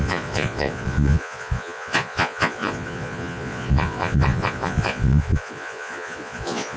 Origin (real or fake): fake